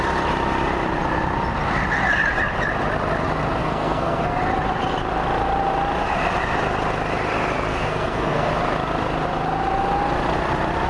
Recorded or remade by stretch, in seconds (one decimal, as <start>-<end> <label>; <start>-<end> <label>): 0.0-3.6 recorded; 3.6-4.4 remade; 4.4-7.7 recorded; 7.7-8.5 remade; 8.5-10.9 recorded